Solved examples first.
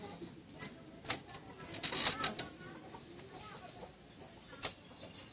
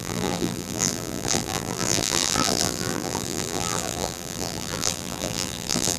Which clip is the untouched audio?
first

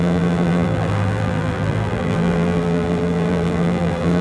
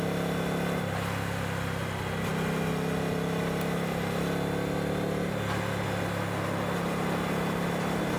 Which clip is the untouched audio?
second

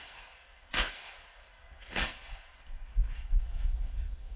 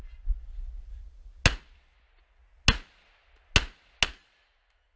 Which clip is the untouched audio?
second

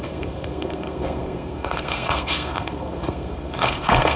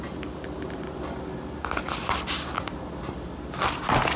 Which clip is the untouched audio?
second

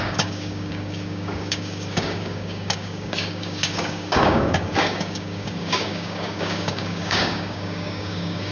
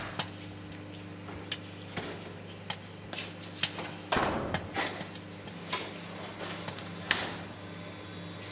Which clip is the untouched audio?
second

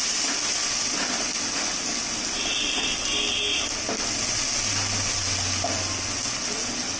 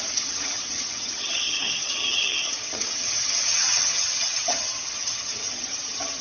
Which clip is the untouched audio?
first